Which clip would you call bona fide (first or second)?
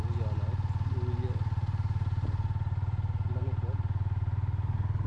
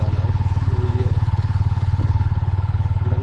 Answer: first